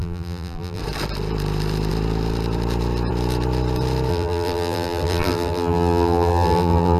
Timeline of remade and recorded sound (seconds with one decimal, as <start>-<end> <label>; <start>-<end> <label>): 0.0-0.8 remade; 0.8-4.1 recorded; 4.1-7.0 remade